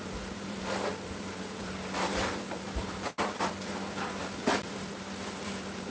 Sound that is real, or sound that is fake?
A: fake